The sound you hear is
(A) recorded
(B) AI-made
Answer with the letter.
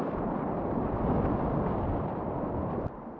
A